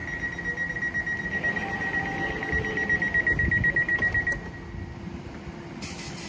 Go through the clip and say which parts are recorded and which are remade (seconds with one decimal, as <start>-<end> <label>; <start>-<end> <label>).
0.0-6.3 recorded